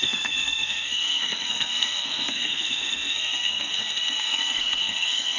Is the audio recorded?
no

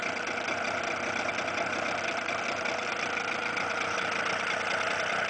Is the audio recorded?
yes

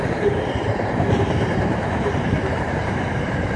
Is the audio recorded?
no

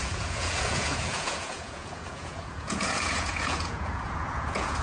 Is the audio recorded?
no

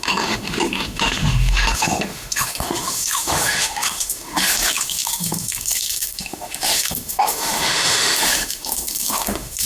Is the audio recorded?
no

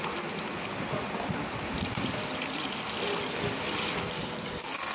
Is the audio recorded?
yes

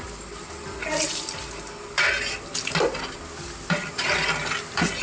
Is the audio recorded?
yes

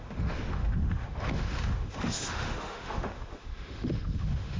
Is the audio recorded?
no